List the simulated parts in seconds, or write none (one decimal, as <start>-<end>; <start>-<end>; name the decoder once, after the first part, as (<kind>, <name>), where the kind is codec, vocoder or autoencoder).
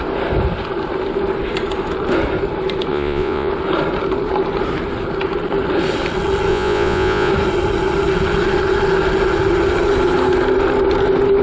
2.9-3.5 (vocoder, Vocos); 6.5-7.3